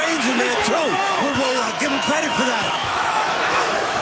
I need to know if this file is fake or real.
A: fake